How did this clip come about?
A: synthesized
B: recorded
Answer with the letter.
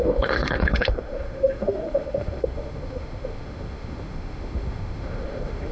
A